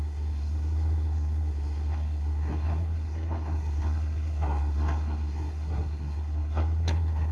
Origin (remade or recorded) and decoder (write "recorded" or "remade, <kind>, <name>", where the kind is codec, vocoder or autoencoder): remade, codec, SNAC